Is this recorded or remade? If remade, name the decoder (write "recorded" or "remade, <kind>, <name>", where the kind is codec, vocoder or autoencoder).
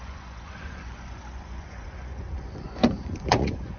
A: remade, vocoder, Vocos